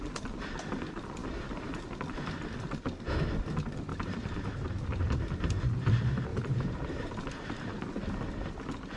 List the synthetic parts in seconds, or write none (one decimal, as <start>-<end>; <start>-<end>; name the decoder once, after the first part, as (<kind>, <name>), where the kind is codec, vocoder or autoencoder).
1.2-1.8 (vocoder, BigVGAN v2); 3.9-5.2; 6.3-7.1